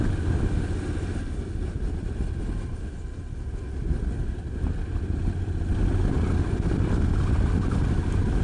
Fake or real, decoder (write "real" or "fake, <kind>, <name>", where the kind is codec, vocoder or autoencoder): real